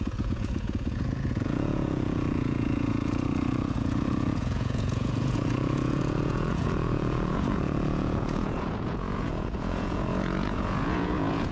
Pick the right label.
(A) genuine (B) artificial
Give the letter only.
B